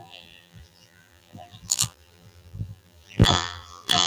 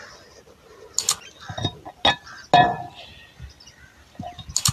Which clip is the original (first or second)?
second